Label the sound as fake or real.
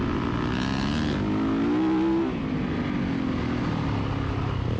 real